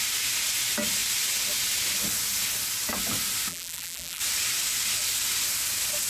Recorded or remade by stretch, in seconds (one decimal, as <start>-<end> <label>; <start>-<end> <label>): 0.0-3.5 recorded; 3.5-4.2 remade; 4.2-6.1 recorded